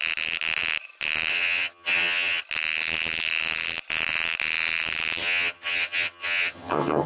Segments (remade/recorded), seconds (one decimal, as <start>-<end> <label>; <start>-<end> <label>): 0.0-1.3 recorded; 1.3-2.4 remade; 2.4-5.2 recorded; 5.2-7.1 remade

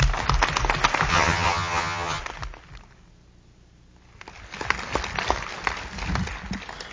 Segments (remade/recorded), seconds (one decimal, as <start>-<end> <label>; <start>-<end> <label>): 0.0-1.1 recorded; 1.1-2.2 remade; 2.2-6.9 recorded

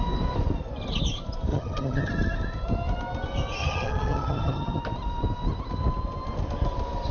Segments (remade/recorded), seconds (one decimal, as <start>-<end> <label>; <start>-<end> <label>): 0.0-1.5 recorded; 1.5-2.1 remade; 2.1-3.6 recorded; 3.6-4.8 remade; 4.8-7.1 recorded

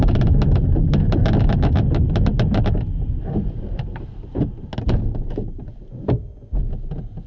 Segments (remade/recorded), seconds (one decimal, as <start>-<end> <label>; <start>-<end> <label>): 0.0-7.3 recorded

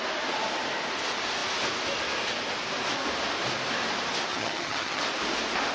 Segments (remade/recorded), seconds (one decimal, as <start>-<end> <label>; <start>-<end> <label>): 0.0-4.3 recorded; 4.3-5.0 remade; 5.0-5.7 recorded

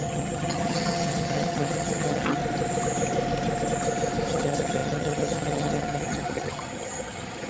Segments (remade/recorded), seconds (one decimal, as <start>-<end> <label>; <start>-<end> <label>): 0.0-2.4 remade; 2.4-4.3 recorded; 4.3-7.5 remade

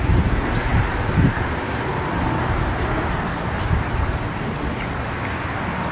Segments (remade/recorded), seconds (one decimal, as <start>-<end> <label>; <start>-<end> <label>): 0.0-5.9 recorded

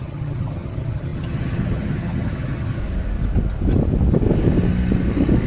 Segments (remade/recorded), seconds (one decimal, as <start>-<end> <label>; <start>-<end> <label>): 0.0-2.8 remade; 2.8-5.5 recorded